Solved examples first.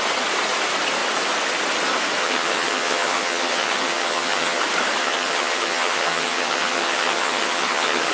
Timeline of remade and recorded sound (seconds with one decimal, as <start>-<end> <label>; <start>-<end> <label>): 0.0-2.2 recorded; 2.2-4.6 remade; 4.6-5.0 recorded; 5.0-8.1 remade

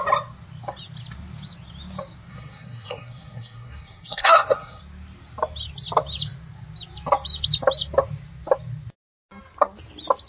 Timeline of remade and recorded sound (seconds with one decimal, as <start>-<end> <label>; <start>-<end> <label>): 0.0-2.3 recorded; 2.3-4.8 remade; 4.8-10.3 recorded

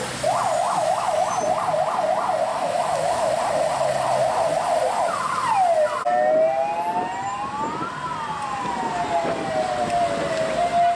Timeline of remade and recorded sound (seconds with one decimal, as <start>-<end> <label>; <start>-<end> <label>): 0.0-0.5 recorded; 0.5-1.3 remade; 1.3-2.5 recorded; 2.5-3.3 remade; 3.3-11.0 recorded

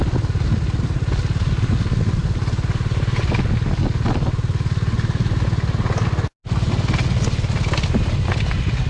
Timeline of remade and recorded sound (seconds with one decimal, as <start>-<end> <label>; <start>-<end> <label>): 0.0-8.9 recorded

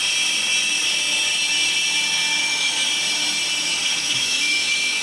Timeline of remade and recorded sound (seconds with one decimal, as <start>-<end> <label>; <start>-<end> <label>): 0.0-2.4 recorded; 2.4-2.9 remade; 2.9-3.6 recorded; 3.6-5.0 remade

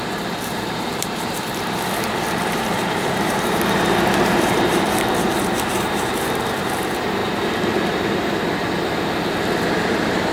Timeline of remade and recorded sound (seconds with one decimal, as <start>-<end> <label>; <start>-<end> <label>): 0.0-7.2 remade; 7.2-9.7 recorded; 9.7-10.3 remade

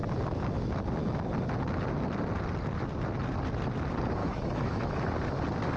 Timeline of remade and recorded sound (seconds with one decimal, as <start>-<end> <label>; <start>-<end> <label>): 0.0-4.2 recorded; 4.2-5.1 remade; 5.1-5.8 recorded